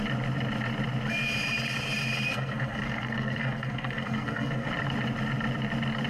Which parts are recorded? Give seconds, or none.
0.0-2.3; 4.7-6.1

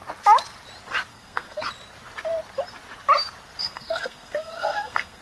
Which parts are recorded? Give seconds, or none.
0.0-1.1; 1.6-3.6

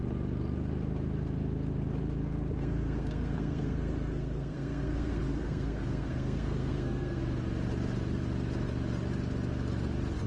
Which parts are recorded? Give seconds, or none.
0.0-2.6; 7.2-10.3

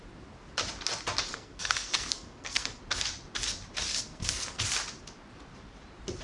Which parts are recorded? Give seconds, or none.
0.0-1.3; 2.8-3.9; 4.6-6.2